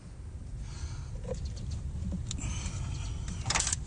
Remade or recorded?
recorded